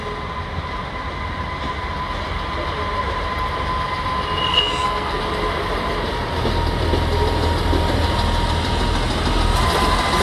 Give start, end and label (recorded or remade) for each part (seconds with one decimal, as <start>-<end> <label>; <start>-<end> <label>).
0.0-4.5 recorded; 4.5-5.2 remade; 5.2-10.2 recorded